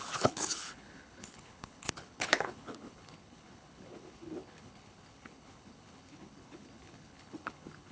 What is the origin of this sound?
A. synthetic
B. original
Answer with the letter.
A